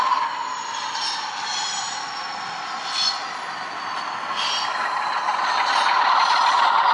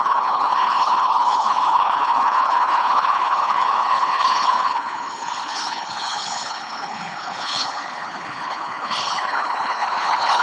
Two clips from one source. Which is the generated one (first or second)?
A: second